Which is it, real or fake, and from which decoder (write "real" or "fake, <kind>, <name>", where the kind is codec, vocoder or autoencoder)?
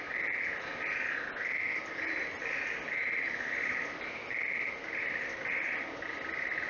real